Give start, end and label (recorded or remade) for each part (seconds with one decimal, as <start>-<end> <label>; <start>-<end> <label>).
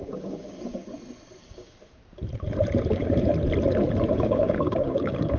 0.0-0.8 remade; 0.8-1.4 recorded; 1.4-2.0 remade; 2.0-2.9 recorded; 2.9-3.3 remade; 3.3-4.1 recorded; 4.1-5.4 remade